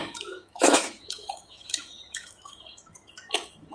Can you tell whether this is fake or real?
fake